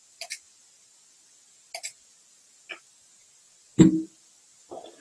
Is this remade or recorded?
recorded